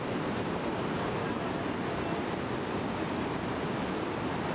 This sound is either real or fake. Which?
real